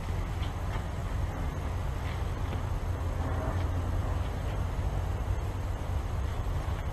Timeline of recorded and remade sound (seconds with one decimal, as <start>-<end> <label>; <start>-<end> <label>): 0.0-4.0 recorded; 4.0-5.6 remade; 5.6-6.3 recorded; 6.3-6.9 remade